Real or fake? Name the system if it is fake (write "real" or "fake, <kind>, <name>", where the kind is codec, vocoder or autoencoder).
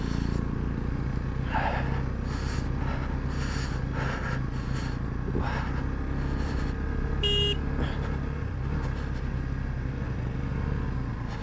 real